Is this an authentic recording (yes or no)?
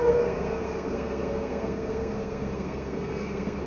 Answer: no